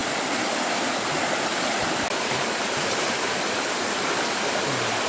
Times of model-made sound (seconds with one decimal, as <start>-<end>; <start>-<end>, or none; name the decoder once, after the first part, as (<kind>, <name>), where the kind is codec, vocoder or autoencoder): none